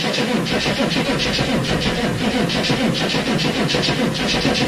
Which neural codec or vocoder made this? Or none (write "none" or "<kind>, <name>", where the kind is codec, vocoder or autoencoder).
none